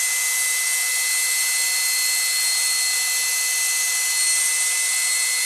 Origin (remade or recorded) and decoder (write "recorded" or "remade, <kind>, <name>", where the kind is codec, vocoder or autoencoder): recorded